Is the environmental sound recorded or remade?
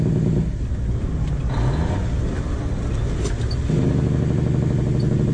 recorded